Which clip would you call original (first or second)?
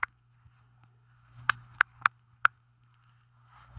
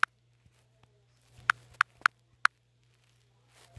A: second